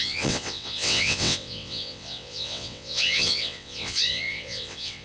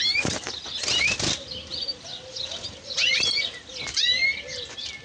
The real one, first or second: second